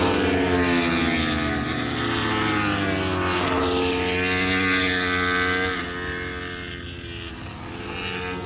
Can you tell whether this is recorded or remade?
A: recorded